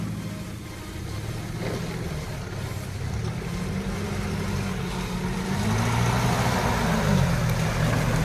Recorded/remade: recorded